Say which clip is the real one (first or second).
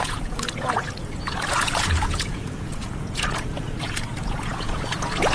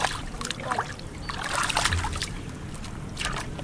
second